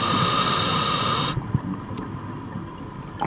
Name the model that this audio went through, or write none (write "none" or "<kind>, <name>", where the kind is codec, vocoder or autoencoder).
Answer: none